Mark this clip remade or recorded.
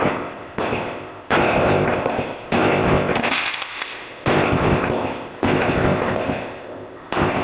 remade